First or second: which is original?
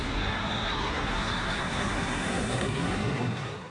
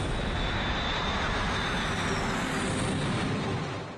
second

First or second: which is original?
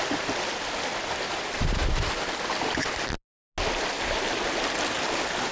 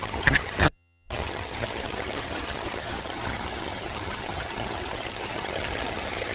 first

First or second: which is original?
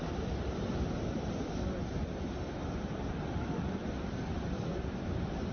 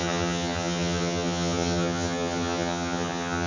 first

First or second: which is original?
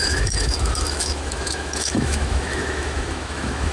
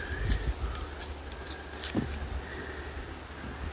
second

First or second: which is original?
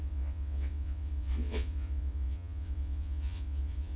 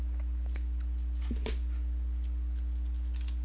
second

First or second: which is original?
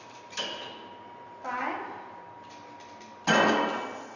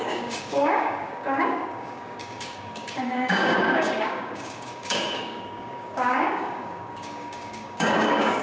first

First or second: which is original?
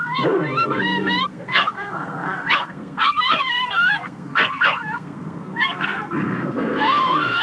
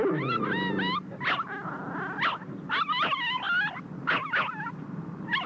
second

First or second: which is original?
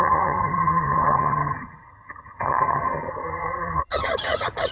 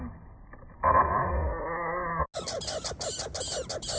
second